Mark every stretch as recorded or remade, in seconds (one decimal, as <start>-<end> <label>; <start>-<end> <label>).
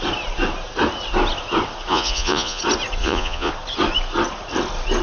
0.0-1.9 recorded; 1.9-2.6 remade; 2.6-3.0 recorded; 3.0-3.5 remade; 3.5-5.0 recorded